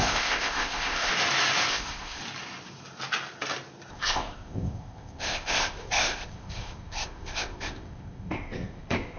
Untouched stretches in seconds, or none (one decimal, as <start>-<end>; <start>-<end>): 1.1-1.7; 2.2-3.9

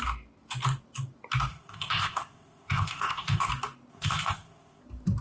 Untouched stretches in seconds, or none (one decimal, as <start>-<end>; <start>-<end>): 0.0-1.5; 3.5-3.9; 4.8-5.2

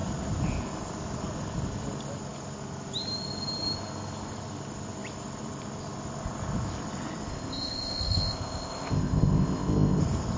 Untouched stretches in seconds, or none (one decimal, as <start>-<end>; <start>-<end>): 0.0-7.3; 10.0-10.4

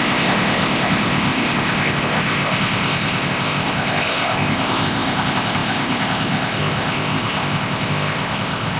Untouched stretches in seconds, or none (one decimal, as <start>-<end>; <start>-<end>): none

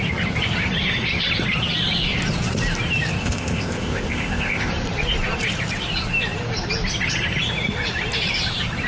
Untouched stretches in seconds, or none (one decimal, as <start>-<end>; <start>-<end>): 0.0-3.2; 4.7-8.9

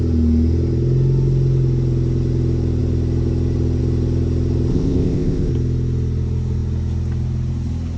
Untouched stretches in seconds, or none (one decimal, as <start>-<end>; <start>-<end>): 0.0-4.7; 5.5-8.0

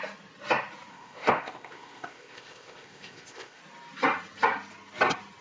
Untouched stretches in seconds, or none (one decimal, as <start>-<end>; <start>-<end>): 0.0-0.9; 3.6-5.4